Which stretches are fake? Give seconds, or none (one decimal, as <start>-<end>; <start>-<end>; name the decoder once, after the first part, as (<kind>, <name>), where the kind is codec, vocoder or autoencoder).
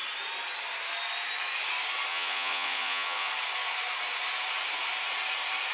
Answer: 2.1-3.3 (vocoder, Vocos)